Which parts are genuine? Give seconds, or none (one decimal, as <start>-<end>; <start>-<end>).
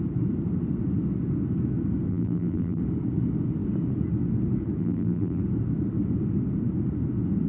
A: 0.0-2.1; 2.8-4.8; 5.4-7.5